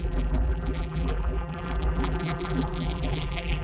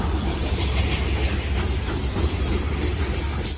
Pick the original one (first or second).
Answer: second